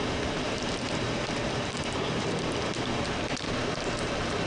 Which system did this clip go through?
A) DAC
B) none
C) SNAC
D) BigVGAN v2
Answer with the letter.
D